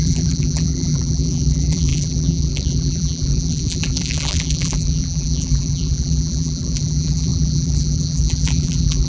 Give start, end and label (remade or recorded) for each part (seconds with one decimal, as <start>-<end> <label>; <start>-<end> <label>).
0.0-9.1 remade